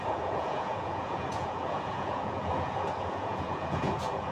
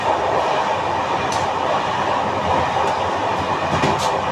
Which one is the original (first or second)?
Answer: second